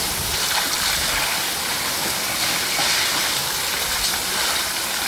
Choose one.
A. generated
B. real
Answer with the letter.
B